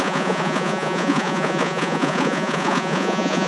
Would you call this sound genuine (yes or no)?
no